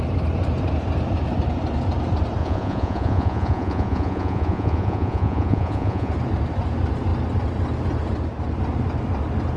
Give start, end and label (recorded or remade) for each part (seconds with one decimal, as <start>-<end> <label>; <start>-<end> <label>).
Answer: 0.0-2.4 recorded; 2.4-6.1 remade; 6.1-9.6 recorded